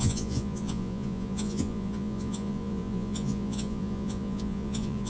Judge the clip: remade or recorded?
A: remade